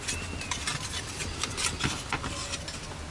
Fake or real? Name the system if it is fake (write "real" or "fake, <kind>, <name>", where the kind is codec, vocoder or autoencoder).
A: real